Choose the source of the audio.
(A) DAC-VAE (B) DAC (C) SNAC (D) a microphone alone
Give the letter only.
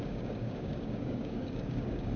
B